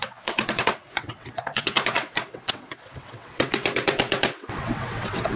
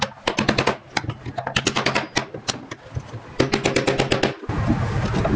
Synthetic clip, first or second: first